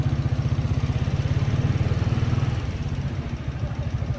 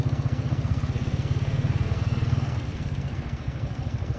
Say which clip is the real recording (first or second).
first